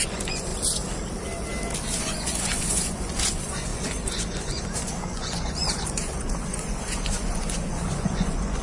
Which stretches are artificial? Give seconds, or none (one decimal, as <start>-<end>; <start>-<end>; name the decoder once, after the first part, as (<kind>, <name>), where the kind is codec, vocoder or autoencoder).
0.0-0.5 (vocoder, Vocos); 2.0-8.6